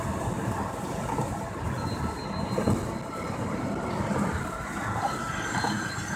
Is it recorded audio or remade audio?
recorded